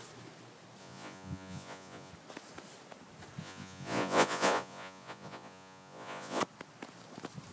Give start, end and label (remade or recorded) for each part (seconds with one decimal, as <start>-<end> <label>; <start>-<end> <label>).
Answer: 0.0-0.8 recorded; 0.8-2.1 remade; 2.1-3.4 recorded; 3.4-6.4 remade; 6.4-7.5 recorded